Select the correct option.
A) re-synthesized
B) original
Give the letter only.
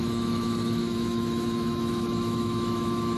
A